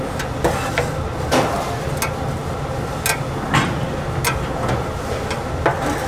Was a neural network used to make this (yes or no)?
no